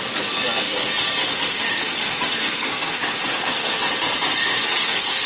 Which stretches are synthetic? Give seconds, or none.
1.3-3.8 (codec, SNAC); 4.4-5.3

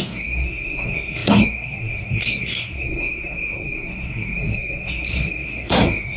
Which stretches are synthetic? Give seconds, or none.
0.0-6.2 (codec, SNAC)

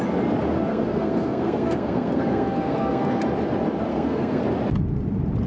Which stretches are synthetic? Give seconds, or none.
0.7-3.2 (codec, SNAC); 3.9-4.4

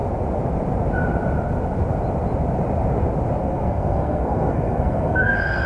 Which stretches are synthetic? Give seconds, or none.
3.4-5.7 (codec, SNAC)

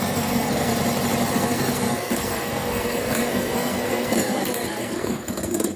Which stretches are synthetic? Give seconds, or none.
0.0-0.7 (codec, SNAC); 1.3-5.8